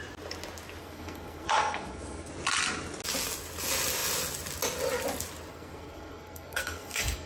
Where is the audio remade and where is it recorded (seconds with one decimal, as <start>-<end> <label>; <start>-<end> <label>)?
0.0-0.8 recorded; 0.8-2.3 remade; 2.3-5.5 recorded; 5.5-7.3 remade